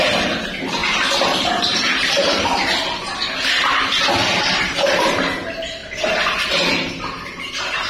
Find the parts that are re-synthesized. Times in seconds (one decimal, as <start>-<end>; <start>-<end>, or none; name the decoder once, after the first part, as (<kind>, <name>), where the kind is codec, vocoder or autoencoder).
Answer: 0.0-0.8 (vocoder, BigVGAN v2); 1.4-2.5; 4.6-7.9